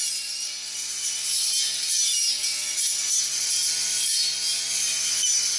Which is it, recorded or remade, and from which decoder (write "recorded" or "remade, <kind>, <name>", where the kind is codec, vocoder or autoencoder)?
recorded